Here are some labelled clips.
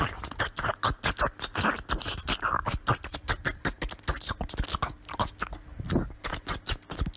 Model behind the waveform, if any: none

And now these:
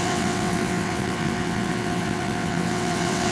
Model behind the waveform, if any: vocoder, WaveNeXt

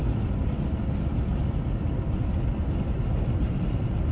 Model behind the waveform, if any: none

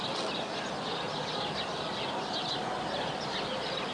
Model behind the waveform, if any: none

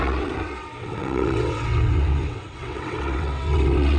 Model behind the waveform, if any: vocoder, WaveNeXt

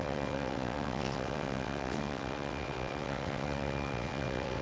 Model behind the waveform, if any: vocoder, WaveNeXt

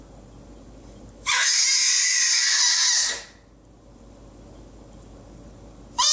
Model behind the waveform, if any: none